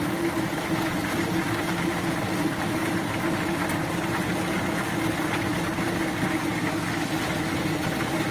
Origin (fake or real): real